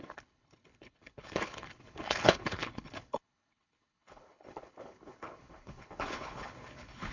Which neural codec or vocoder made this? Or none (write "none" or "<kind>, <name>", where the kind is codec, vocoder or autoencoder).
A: codec, HILCodec